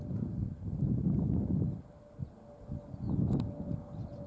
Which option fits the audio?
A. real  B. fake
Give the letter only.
A